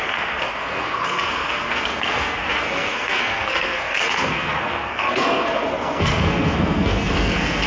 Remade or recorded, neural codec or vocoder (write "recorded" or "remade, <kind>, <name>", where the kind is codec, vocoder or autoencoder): remade, codec, SNAC